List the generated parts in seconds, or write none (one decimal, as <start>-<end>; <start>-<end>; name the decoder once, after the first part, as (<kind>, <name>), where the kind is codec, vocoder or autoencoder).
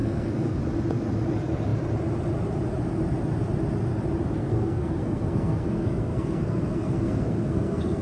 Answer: 0.0-0.6 (codec, SNAC); 4.4-8.0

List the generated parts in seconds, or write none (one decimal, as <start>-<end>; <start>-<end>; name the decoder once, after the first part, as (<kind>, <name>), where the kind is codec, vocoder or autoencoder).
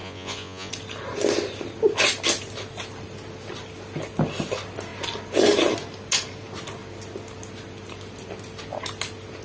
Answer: 0.0-0.7 (vocoder, Vocos)